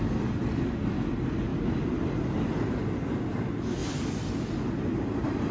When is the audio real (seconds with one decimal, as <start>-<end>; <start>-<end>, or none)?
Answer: 0.0-5.5